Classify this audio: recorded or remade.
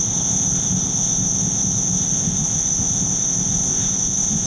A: remade